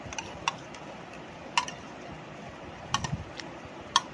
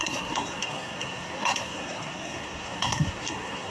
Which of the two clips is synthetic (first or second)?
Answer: second